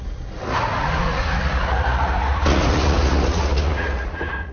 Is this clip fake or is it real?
fake